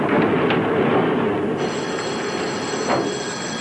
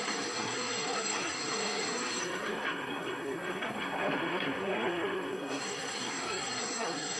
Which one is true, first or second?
first